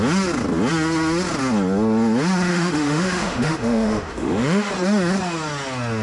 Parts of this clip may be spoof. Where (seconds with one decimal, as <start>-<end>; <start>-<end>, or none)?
2.5-4.7